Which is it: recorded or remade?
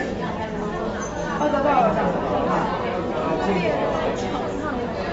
recorded